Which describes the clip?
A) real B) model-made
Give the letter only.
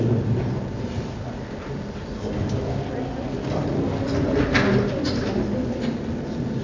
A